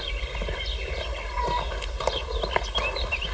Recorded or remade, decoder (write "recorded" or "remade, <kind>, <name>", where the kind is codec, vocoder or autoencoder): recorded